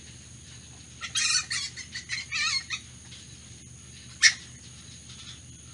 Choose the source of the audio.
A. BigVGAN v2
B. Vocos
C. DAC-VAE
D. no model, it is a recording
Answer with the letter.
D